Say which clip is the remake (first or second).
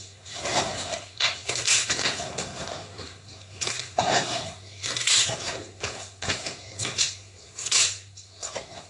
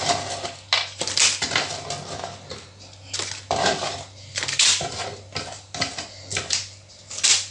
first